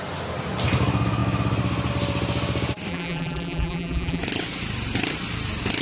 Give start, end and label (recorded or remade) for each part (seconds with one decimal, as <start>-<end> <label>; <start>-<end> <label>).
0.0-2.9 recorded; 2.9-4.2 remade; 4.2-5.8 recorded